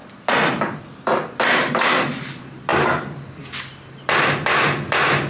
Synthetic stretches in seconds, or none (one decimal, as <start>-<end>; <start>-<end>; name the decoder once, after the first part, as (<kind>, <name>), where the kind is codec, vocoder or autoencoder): none

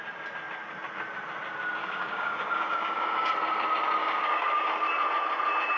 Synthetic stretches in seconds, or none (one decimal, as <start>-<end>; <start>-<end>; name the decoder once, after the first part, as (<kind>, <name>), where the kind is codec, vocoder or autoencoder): 1.8-3.3 (codec, DAC); 4.0-4.7